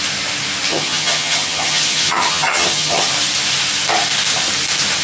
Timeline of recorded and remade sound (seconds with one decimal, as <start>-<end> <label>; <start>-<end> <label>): 0.0-0.7 recorded; 0.7-3.1 remade; 3.1-5.0 recorded